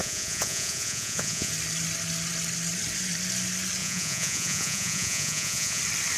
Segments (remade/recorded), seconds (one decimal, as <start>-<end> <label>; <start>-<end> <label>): 0.0-1.5 remade; 1.5-3.8 recorded; 3.8-5.8 remade; 5.8-6.2 recorded